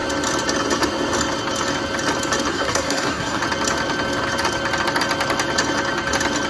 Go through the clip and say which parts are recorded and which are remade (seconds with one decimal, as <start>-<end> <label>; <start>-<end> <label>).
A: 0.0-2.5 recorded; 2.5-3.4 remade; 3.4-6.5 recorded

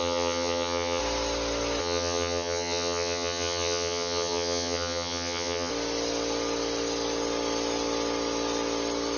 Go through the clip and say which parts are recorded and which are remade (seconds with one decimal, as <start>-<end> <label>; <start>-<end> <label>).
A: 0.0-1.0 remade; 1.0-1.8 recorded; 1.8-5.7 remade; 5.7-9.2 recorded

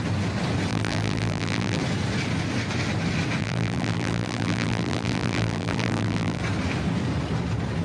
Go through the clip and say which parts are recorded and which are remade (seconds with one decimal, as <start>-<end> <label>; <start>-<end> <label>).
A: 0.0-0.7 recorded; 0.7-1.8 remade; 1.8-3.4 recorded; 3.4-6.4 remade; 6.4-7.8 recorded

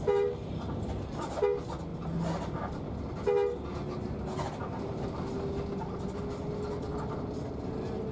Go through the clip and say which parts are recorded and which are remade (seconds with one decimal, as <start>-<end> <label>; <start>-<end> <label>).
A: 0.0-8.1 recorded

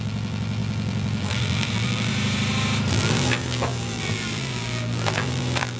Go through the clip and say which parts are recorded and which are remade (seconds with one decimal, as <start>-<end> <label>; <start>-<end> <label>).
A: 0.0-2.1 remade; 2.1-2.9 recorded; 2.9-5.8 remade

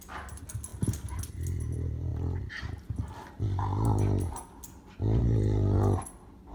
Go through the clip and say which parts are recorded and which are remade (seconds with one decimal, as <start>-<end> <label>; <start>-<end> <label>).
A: 0.0-6.5 recorded